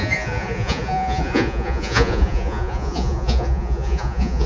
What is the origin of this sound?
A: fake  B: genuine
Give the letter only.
A